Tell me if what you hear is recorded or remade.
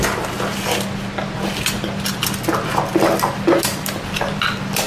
recorded